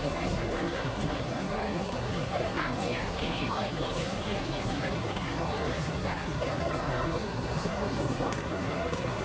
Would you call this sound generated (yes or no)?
yes